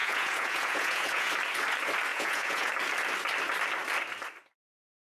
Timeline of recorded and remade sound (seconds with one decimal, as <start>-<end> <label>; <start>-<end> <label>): 0.0-1.3 remade; 1.3-2.1 recorded; 2.1-2.7 remade; 2.7-5.1 recorded